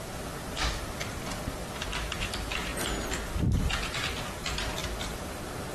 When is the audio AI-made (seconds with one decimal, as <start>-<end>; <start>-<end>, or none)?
1.6-2.3; 4.8-5.7